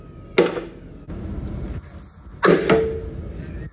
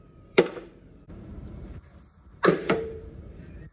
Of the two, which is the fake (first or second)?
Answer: second